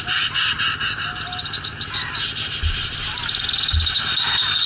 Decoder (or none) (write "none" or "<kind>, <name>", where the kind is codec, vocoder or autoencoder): none